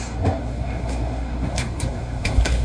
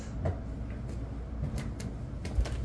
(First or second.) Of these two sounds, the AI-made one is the first